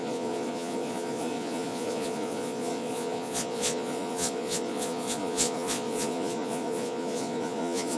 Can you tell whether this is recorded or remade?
remade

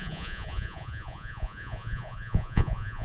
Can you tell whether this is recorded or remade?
remade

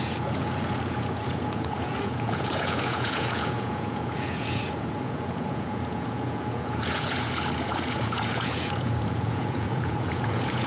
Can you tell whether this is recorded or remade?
remade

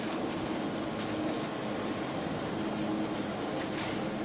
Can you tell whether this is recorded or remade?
recorded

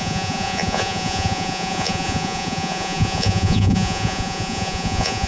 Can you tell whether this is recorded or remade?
remade